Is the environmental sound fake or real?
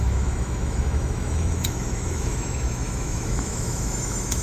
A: fake